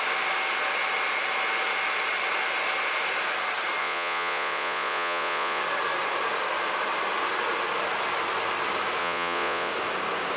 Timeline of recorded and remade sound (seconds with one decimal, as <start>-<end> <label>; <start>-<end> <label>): 0.0-3.8 recorded; 3.8-5.6 remade; 5.6-9.0 recorded; 9.0-9.7 remade; 9.7-10.4 recorded